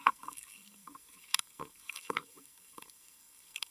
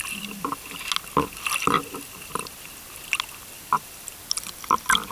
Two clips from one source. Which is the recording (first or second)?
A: second